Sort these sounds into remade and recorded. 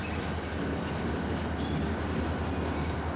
recorded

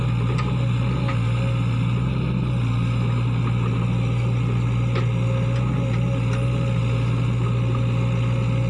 recorded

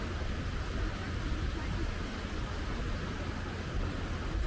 recorded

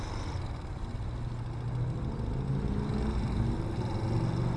recorded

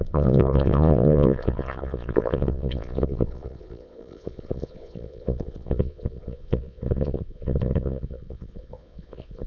remade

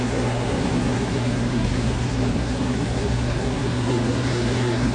remade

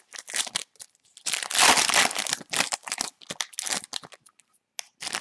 recorded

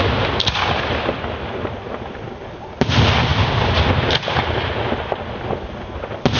recorded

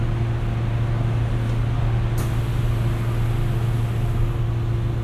recorded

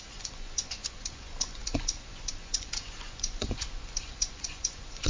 remade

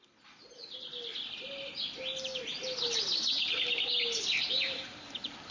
recorded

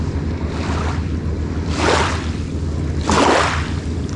recorded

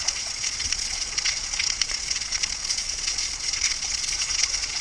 remade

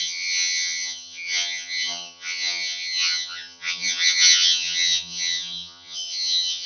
remade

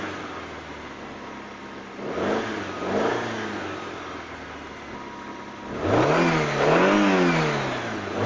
recorded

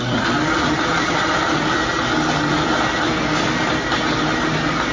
recorded